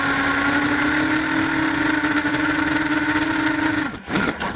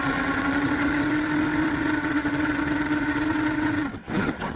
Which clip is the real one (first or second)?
first